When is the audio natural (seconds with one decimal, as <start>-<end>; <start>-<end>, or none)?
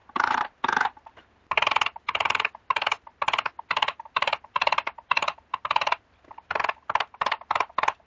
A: 0.6-8.1